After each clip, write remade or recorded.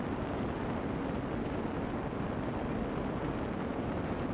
recorded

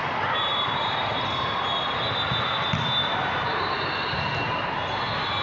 recorded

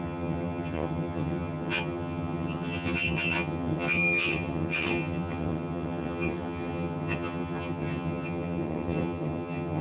remade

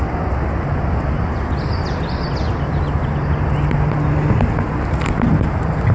recorded